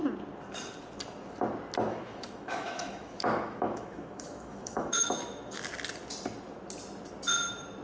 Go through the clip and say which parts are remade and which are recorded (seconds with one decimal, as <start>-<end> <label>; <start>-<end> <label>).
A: 0.0-1.9 recorded; 1.9-5.6 remade; 5.6-7.8 recorded